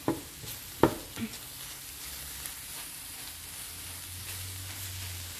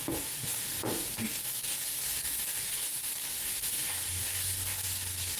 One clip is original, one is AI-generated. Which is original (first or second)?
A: first